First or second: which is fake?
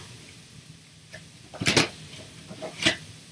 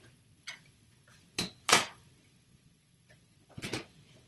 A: second